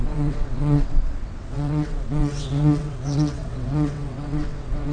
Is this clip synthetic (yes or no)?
yes